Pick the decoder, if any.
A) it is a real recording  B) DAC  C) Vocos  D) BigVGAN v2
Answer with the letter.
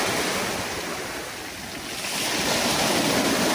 A